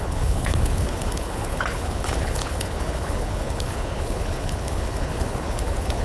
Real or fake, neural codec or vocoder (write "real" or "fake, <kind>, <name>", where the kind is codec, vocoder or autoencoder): fake, codec, HILCodec